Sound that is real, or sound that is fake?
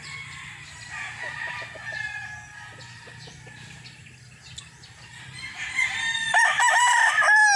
real